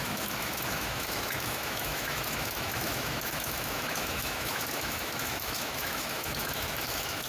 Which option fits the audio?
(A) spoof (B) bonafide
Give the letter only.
A